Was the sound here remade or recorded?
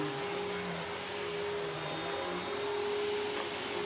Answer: recorded